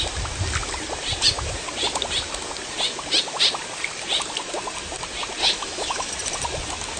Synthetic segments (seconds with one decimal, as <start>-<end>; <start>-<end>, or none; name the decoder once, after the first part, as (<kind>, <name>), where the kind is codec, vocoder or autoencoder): 5.4-6.1 (autoencoder, DAC-VAE)